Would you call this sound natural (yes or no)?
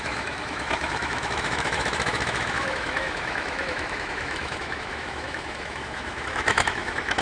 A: no